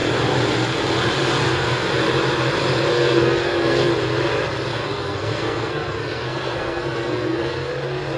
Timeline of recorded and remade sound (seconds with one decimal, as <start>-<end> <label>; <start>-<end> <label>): 0.0-1.4 recorded; 1.4-1.9 remade; 1.9-2.9 recorded; 2.9-3.9 remade; 3.9-4.7 recorded; 4.7-7.7 remade; 7.7-8.2 recorded